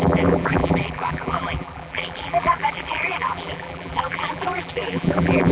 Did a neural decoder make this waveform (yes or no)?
yes